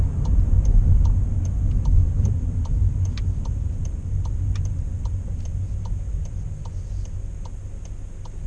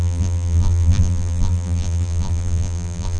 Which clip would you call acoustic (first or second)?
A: first